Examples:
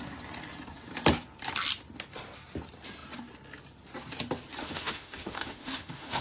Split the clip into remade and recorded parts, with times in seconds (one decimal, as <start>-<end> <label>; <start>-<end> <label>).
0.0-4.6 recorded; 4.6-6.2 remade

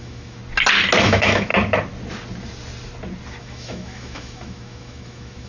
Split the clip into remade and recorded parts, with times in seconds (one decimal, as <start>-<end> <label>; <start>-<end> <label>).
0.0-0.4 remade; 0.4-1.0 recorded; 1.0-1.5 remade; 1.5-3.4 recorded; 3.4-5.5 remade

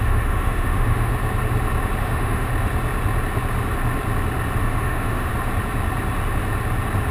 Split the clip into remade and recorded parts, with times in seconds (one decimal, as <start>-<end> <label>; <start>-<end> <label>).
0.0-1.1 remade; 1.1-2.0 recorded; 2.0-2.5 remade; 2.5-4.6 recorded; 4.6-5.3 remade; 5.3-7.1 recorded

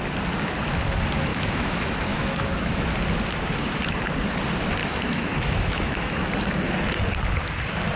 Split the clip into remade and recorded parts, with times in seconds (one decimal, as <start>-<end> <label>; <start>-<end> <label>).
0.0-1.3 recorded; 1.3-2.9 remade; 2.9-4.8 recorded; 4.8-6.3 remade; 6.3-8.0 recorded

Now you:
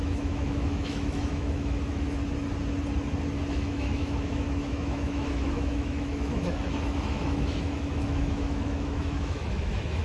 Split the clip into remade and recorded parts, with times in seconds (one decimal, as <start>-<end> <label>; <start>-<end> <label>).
0.0-2.2 remade; 2.2-3.5 recorded; 3.5-10.0 remade

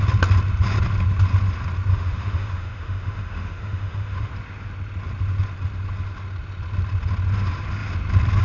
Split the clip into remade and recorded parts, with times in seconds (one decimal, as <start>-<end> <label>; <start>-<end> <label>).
0.0-1.9 recorded; 1.9-4.3 remade; 4.3-8.4 recorded

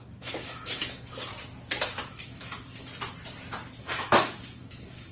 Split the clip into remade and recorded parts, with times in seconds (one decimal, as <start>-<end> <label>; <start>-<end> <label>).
0.0-1.3 remade; 1.3-2.1 recorded; 2.1-2.9 remade; 2.9-3.8 recorded; 3.8-5.1 remade

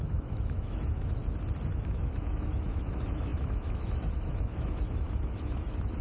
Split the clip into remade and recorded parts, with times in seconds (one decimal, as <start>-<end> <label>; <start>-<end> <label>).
0.0-1.2 remade; 1.2-1.7 recorded; 1.7-6.0 remade